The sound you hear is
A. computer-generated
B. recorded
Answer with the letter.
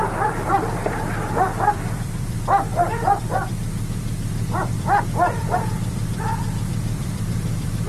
A